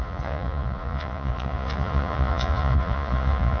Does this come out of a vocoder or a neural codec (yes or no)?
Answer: yes